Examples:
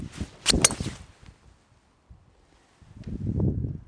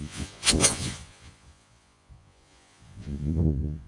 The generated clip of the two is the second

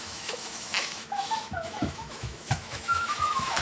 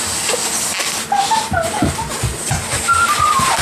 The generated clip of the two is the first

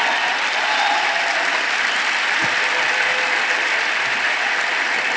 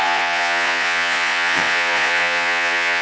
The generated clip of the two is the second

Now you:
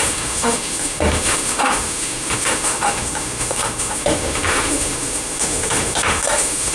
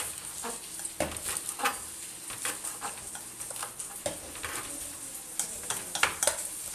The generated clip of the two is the first